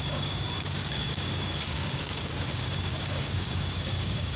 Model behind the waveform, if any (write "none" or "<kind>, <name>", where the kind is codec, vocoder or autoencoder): codec, DAC